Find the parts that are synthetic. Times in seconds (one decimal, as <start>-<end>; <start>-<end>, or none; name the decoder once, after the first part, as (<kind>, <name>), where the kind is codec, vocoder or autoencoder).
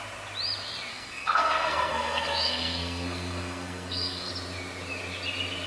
0.9-4.3 (codec, SNAC)